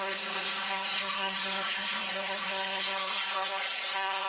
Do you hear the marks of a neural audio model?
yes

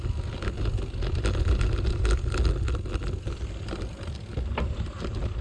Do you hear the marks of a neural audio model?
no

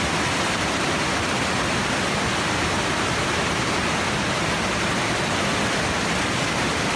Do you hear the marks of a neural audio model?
no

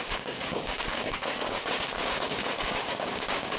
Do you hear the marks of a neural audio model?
yes